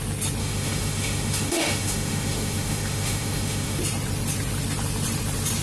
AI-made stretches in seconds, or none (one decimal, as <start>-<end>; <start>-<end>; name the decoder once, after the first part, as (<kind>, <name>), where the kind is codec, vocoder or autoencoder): 0.4-3.8 (autoencoder, DAC-VAE)